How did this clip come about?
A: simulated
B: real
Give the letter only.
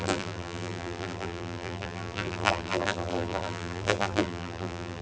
A